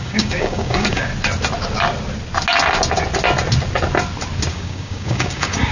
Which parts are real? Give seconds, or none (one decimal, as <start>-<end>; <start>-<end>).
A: 1.1-4.5